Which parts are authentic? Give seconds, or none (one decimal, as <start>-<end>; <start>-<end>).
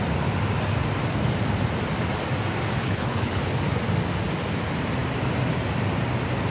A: 0.0-2.8; 3.4-6.5